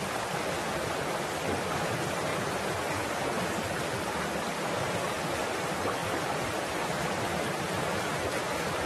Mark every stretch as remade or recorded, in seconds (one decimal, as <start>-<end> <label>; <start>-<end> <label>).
0.0-8.9 recorded